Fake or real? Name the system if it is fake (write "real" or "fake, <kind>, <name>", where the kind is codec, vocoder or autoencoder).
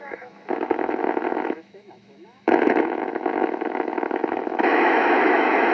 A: fake, autoencoder, DAC-VAE